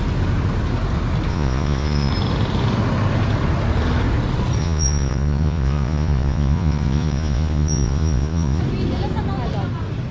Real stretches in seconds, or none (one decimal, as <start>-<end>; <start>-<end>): 0.0-1.3; 2.1-4.6; 8.6-10.1